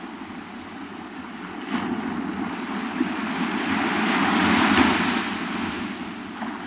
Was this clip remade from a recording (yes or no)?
no